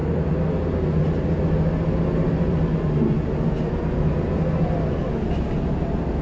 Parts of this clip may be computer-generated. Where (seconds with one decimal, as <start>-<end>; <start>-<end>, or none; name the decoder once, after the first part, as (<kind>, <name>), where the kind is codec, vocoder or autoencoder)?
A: none